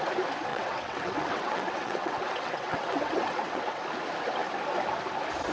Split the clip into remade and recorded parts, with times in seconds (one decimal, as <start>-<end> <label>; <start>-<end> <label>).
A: 0.0-0.5 recorded; 0.5-3.8 remade; 3.8-5.5 recorded